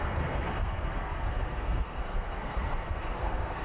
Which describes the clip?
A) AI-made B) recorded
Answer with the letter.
A